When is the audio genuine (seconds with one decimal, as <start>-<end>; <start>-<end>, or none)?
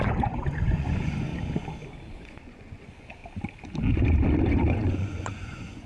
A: 1.3-2.1; 3.2-4.5